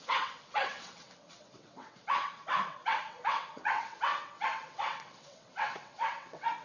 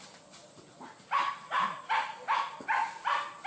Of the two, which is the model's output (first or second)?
first